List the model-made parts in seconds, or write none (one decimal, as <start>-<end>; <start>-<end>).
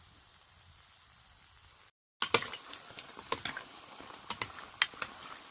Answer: none